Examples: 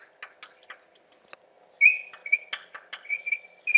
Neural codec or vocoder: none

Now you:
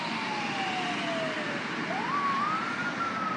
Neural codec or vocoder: none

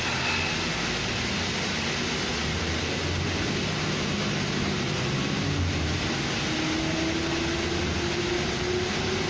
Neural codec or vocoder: none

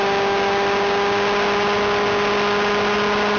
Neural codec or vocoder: none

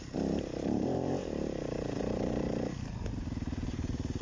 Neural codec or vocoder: vocoder, BigVGAN v2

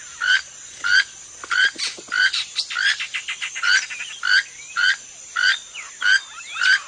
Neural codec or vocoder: none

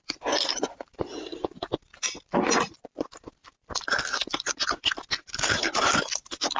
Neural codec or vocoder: none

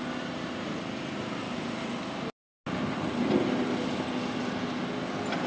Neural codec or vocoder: none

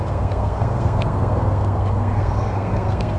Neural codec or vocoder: codec, SNAC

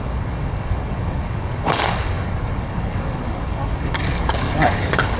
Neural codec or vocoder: codec, DAC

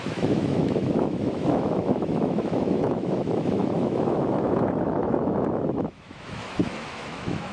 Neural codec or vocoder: autoencoder, DAC-VAE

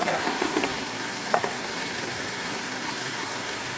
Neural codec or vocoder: codec, SNAC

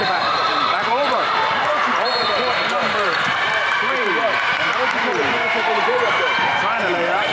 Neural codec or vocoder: vocoder, BigVGAN v2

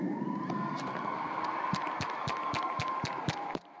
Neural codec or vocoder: vocoder, BigVGAN v2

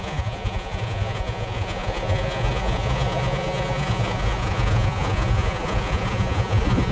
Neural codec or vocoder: vocoder, Vocos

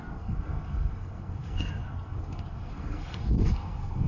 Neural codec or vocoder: codec, SNAC